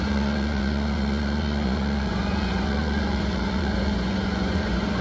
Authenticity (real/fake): fake